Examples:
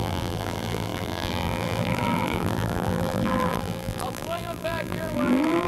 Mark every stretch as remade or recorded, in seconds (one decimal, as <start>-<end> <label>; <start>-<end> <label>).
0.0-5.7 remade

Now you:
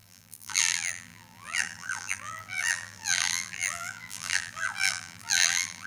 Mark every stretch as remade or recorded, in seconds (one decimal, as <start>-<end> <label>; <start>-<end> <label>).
0.0-5.9 remade

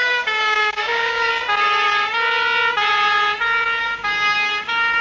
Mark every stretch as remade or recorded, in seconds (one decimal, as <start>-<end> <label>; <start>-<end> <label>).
0.0-1.3 remade; 1.3-3.8 recorded; 3.8-5.0 remade

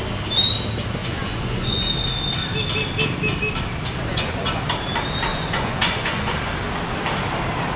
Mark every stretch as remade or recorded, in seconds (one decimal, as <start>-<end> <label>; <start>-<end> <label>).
0.0-1.0 recorded; 1.0-1.9 remade; 1.9-4.1 recorded; 4.1-4.6 remade; 4.6-5.3 recorded; 5.3-6.4 remade; 6.4-7.8 recorded

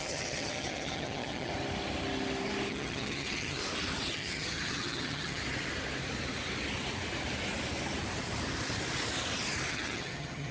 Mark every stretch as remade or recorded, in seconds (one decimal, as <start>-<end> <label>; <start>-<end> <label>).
0.0-1.5 remade; 1.5-2.7 recorded; 2.7-3.6 remade; 3.6-4.1 recorded; 4.1-5.4 remade; 5.4-9.7 recorded; 9.7-10.5 remade